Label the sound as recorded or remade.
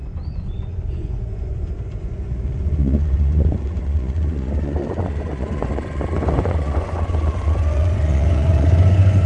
remade